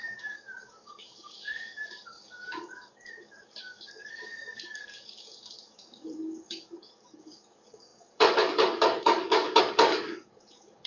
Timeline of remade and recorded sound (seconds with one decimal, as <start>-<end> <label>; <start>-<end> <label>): 0.0-10.9 remade